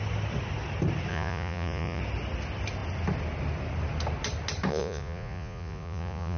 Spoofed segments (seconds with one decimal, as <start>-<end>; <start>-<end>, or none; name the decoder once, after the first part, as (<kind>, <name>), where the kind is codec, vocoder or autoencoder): 1.1-2.0 (vocoder, Vocos); 4.7-6.4